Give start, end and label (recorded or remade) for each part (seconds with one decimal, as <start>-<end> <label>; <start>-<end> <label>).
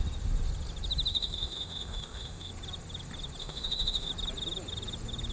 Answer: 0.0-1.1 recorded; 1.1-2.5 remade; 2.5-3.4 recorded; 3.4-4.1 remade; 4.1-5.3 recorded